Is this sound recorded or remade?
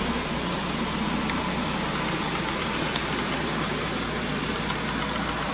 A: recorded